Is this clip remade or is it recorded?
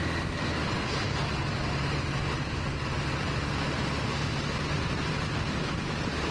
recorded